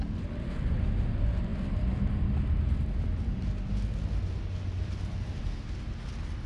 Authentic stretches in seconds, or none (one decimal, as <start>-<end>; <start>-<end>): 0.0-6.5

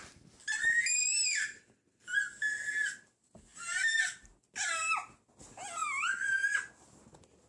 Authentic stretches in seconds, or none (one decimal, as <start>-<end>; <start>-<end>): 0.0-1.1; 1.6-3.5; 4.0-7.5

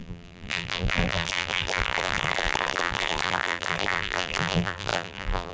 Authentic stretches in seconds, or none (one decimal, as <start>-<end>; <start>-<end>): none

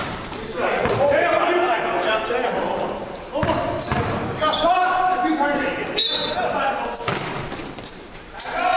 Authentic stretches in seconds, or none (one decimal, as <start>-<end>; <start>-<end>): none

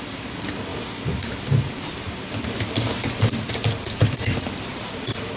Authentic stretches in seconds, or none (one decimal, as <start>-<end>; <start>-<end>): 0.7-3.9; 4.7-5.4